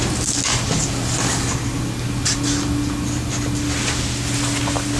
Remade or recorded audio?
recorded